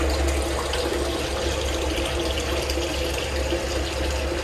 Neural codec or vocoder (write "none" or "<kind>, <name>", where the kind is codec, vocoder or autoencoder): none